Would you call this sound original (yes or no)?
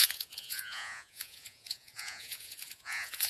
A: no